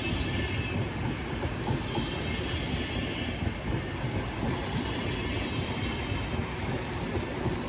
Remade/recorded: recorded